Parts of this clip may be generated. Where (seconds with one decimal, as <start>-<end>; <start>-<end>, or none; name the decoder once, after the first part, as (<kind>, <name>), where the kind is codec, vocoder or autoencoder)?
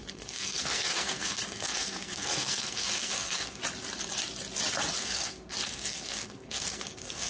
0.0-3.6 (codec, SNAC); 5.0-7.3